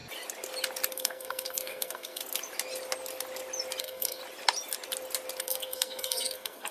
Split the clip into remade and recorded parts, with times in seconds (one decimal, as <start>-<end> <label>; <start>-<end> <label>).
0.0-0.9 recorded; 0.9-2.2 remade; 2.2-3.8 recorded; 3.8-4.2 remade; 4.2-5.4 recorded; 5.4-6.7 remade

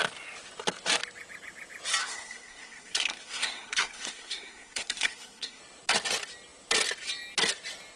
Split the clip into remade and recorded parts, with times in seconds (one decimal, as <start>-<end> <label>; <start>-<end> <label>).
0.0-2.0 recorded; 2.0-5.6 remade; 5.6-8.0 recorded

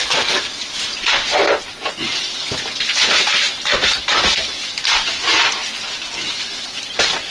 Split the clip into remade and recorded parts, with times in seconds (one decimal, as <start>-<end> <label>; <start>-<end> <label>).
0.0-7.3 recorded

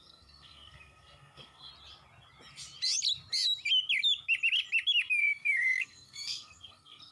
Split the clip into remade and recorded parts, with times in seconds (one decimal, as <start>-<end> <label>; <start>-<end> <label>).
0.0-1.7 remade; 1.7-5.2 recorded; 5.2-7.1 remade